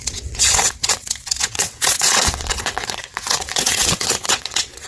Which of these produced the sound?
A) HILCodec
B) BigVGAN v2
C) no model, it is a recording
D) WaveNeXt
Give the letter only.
D